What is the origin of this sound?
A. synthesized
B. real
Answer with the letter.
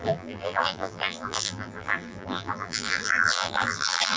A